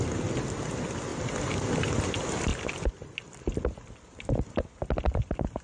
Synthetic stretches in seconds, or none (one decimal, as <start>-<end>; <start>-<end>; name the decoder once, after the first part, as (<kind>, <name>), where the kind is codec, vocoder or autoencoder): none

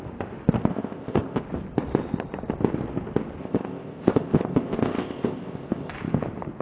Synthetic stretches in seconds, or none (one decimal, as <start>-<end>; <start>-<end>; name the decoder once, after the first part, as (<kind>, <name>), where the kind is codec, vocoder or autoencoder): 0.7-1.4 (codec, ZipCodec); 3.4-5.9